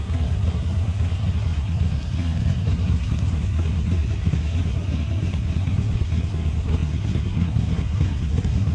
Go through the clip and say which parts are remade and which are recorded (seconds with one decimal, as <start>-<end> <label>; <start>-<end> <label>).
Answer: 0.0-8.7 remade